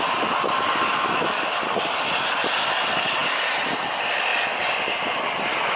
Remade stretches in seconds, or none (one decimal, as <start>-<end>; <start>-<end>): 0.9-1.6